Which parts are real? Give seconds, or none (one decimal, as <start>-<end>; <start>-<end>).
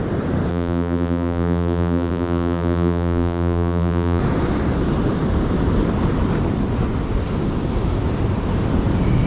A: 0.0-0.5; 4.2-9.3